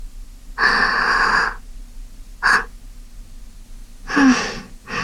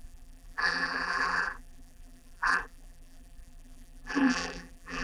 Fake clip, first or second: second